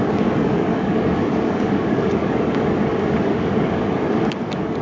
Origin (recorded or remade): remade